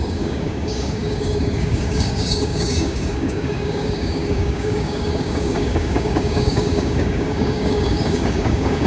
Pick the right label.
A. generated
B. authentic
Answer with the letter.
A